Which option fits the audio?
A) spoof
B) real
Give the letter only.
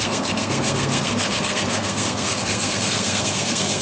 A